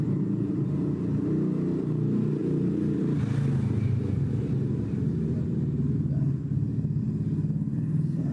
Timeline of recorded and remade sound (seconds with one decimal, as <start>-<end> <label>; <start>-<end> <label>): 0.0-8.3 recorded